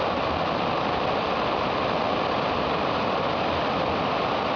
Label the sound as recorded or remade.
recorded